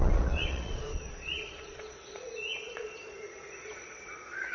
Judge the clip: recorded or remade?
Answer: remade